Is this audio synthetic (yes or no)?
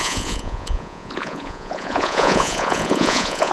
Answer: yes